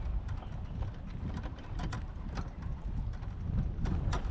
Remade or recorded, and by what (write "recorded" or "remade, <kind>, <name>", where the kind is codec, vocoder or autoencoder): recorded